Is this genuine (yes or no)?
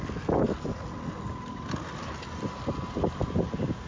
yes